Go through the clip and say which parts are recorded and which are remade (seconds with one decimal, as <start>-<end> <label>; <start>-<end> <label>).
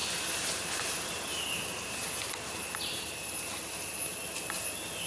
0.0-5.1 recorded